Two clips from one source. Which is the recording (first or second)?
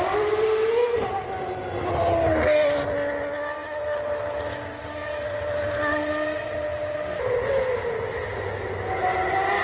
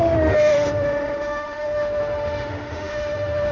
first